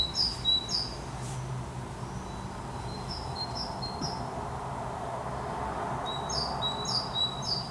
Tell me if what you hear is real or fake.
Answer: real